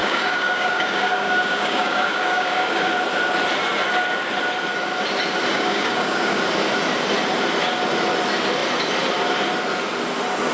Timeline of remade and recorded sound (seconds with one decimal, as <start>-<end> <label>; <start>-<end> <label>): 0.0-2.9 remade; 2.9-5.5 recorded; 5.5-6.4 remade; 6.4-10.5 recorded